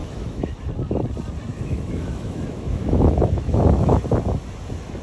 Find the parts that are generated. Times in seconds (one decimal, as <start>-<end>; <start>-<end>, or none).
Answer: 0.0-0.7; 1.5-4.0